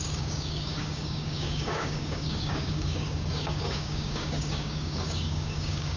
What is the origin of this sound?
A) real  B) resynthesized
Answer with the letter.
B